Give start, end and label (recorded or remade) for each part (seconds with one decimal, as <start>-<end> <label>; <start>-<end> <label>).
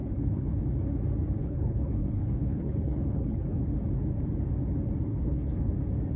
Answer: 0.0-0.6 remade; 0.6-1.4 recorded; 1.4-3.6 remade; 3.6-5.1 recorded; 5.1-5.7 remade; 5.7-6.2 recorded